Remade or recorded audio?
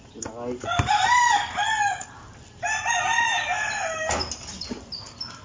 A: recorded